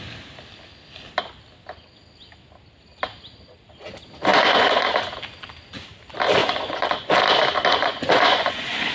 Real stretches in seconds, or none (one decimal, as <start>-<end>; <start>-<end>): 0.0-4.3; 4.9-6.4; 7.1-7.7